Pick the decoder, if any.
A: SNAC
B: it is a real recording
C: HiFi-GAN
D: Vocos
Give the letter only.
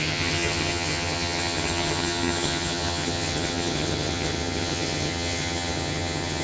C